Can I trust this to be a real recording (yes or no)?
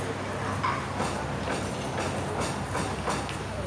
yes